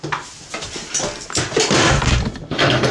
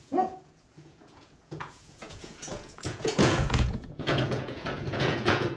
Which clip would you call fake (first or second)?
second